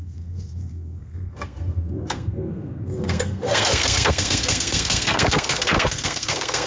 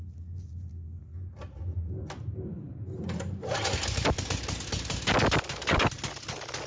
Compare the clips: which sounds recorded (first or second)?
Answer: second